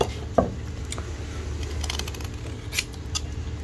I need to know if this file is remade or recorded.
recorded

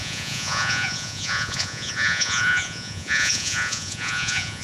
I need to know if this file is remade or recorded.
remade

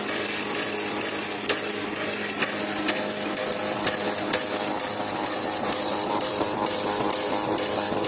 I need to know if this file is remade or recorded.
recorded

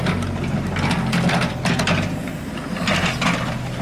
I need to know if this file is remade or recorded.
recorded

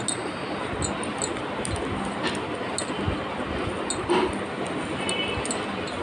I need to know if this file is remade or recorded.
recorded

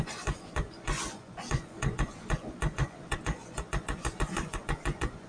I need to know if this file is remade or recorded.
remade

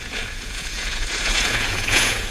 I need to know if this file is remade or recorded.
remade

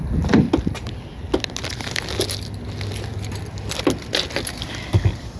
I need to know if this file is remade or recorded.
recorded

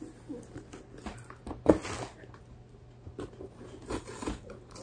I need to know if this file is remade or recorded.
recorded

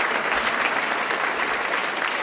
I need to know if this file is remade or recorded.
recorded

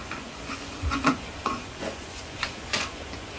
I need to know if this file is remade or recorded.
remade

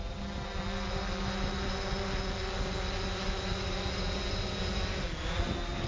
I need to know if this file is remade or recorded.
recorded